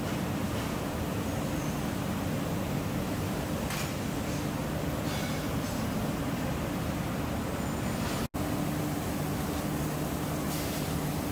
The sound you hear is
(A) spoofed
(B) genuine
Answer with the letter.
B